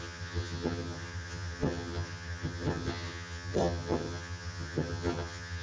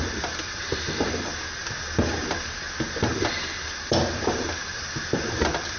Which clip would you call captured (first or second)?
second